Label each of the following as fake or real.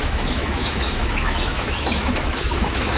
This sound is fake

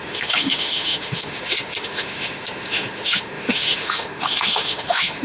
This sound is fake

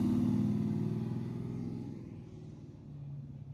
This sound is real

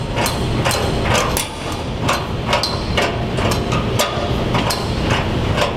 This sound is real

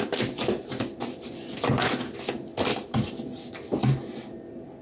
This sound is real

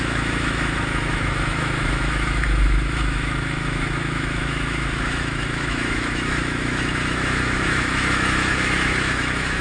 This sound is fake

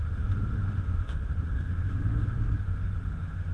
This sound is fake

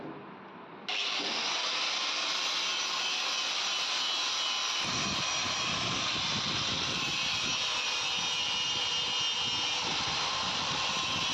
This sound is real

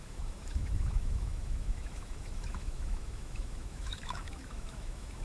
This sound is fake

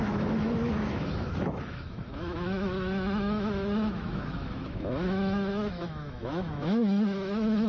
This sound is fake